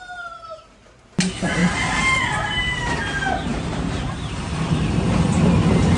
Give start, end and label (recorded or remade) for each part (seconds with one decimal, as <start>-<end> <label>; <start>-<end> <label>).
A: 0.0-1.6 recorded; 1.6-2.2 remade; 2.2-3.5 recorded; 3.5-4.8 remade; 4.8-6.0 recorded